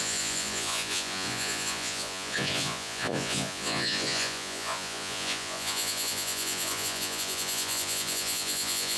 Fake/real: fake